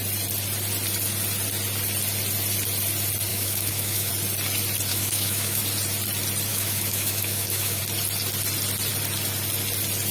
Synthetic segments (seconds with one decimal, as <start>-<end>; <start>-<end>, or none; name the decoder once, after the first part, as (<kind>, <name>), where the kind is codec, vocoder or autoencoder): 3.3-4.1 (autoencoder, DAC-VAE); 4.9-5.6; 6.5-7.8